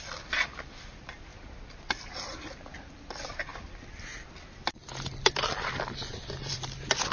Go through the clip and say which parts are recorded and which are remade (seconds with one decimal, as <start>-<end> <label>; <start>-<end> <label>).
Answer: 0.0-1.3 remade; 1.3-2.9 recorded; 2.9-7.1 remade